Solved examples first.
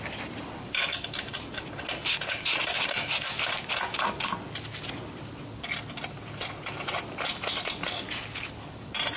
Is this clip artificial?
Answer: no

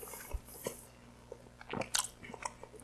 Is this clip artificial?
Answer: no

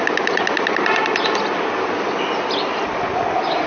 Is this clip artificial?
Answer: no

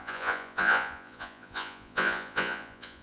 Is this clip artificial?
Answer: yes